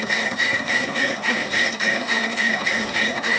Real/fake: fake